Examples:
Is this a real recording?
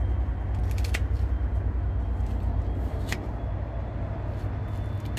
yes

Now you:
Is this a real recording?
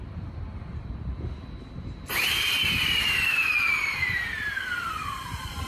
no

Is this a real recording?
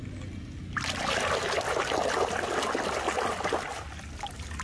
yes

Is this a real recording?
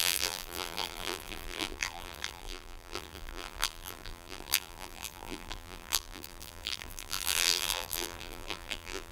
no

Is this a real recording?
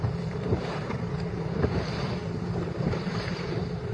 no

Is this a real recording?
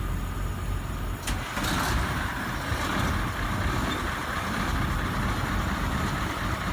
yes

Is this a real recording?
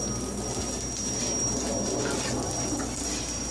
yes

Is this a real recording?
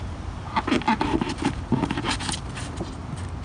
yes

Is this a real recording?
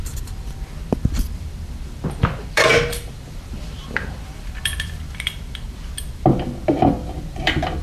no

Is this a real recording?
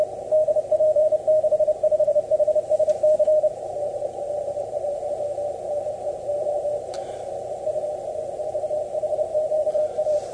no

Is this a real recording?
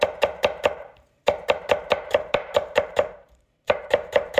no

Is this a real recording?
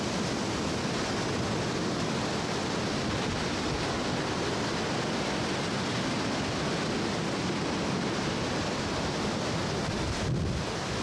yes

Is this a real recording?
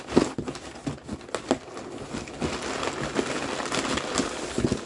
yes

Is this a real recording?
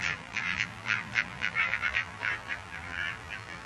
no